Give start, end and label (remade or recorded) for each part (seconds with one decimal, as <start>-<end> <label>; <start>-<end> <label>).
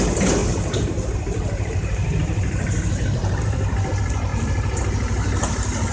0.0-0.4 recorded; 0.4-3.9 remade; 3.9-4.3 recorded; 4.3-4.8 remade; 4.8-5.9 recorded